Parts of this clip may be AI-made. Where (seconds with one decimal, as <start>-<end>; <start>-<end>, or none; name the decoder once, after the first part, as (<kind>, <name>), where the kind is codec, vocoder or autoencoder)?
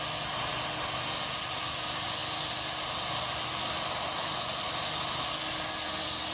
none